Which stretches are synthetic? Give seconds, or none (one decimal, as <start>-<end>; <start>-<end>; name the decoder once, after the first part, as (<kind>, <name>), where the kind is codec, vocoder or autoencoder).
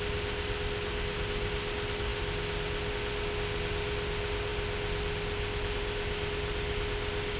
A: none